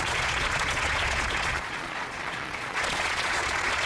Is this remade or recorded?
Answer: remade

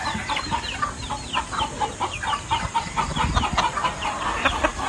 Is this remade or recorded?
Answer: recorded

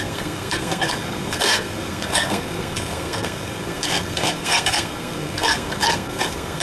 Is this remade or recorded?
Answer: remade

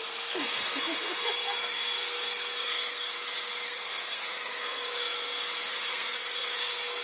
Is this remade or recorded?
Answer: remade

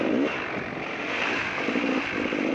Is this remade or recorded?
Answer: recorded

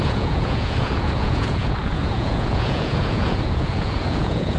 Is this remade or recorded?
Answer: remade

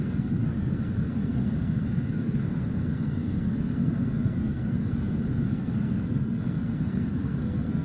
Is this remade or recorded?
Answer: remade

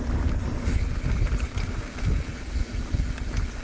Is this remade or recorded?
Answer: recorded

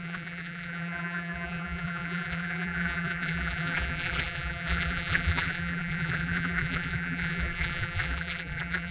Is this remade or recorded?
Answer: remade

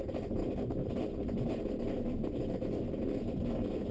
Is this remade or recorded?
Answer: recorded